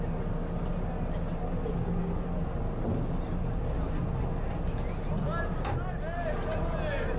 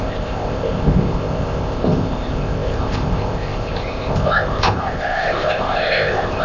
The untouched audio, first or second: first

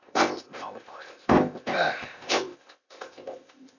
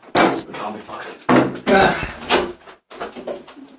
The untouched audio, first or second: second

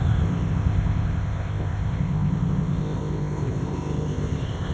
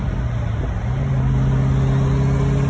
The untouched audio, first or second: second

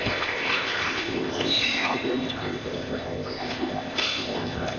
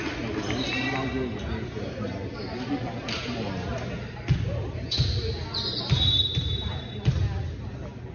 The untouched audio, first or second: second